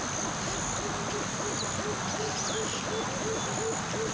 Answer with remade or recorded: recorded